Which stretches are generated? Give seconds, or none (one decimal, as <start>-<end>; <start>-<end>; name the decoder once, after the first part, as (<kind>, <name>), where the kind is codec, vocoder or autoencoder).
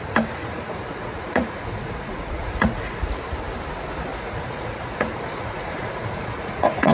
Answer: 0.4-3.0 (vocoder, Vocos); 4.1-6.9